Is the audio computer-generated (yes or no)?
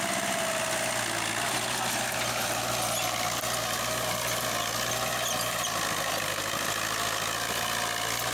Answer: no